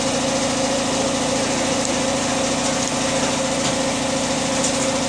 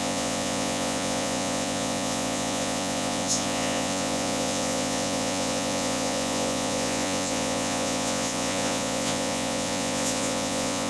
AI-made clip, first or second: second